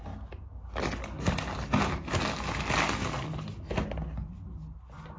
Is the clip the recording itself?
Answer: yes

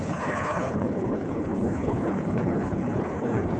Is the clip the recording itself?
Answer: no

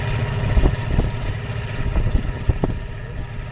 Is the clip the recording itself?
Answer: yes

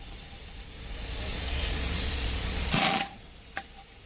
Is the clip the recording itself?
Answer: no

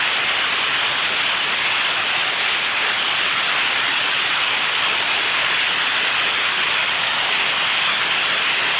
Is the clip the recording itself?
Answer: yes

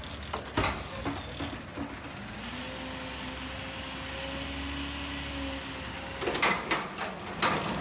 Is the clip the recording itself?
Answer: yes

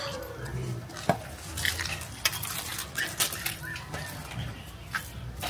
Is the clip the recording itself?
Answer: yes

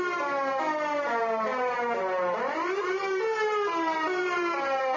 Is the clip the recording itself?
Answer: no